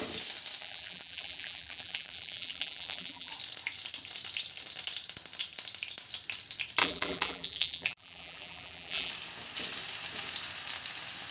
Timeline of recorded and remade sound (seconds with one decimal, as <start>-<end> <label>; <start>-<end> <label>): 0.0-0.6 recorded; 0.6-3.3 remade; 3.3-6.8 recorded; 6.8-9.1 remade; 9.1-11.3 recorded